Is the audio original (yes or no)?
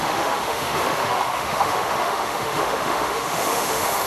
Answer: no